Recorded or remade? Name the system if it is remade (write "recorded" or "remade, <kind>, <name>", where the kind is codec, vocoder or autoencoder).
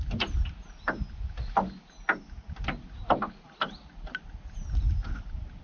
recorded